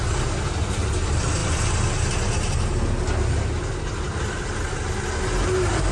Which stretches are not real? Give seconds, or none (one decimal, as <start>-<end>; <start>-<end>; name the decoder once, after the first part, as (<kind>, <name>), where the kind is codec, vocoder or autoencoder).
none